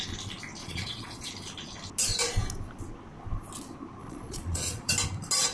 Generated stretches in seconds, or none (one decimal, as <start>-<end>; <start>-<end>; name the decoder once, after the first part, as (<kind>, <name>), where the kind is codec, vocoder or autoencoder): 0.6-1.3 (vocoder, Vocos); 4.0-4.9